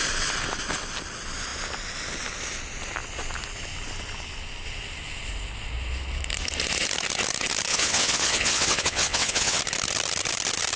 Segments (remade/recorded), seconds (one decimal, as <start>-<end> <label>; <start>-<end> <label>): 0.0-7.7 recorded; 7.7-9.6 remade; 9.6-10.8 recorded